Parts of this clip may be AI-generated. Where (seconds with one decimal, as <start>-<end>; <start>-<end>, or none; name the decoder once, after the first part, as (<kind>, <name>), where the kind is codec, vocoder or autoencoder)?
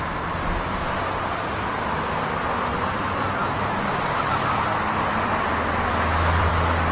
2.7-6.5 (vocoder, BigVGAN v2)